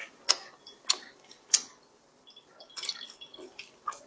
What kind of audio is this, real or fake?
real